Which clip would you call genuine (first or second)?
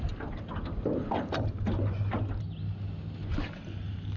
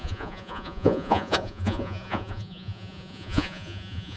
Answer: first